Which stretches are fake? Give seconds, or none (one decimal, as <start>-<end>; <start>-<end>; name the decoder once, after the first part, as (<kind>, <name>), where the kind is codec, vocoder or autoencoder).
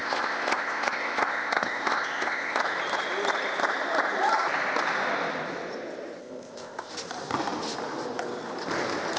0.0-2.6 (codec, ZipCodec); 6.2-6.9